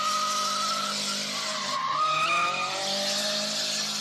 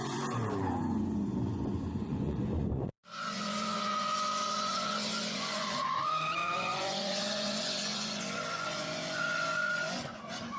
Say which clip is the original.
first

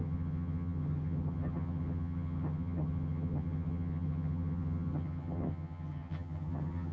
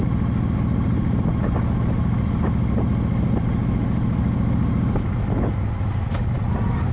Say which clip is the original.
second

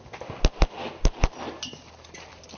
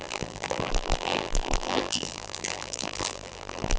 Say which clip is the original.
first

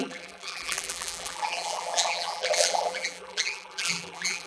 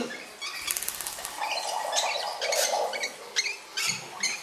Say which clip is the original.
second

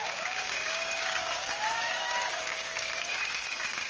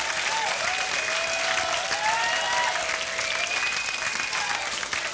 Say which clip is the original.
second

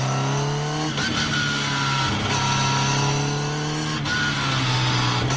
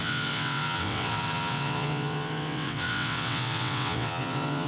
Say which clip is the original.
first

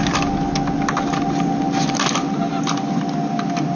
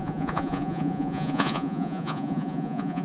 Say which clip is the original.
first